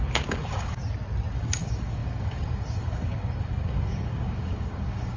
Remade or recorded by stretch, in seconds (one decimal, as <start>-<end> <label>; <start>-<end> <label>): 0.0-0.8 remade; 0.8-1.3 recorded; 1.3-5.2 remade

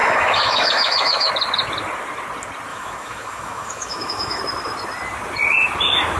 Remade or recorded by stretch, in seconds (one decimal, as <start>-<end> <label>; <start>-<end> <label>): 0.0-1.3 remade; 1.3-2.7 recorded; 2.7-4.4 remade; 4.4-6.2 recorded

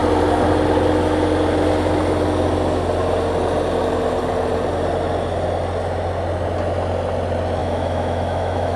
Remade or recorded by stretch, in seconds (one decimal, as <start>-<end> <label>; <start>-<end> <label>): 0.0-7.6 recorded; 7.6-8.8 remade

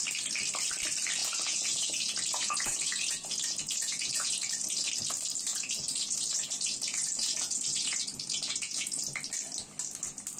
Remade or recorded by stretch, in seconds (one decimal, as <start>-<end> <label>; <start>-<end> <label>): 0.0-1.2 recorded; 1.2-4.9 remade; 4.9-5.5 recorded; 5.5-9.0 remade; 9.0-10.4 recorded